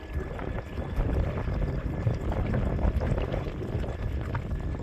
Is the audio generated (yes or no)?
no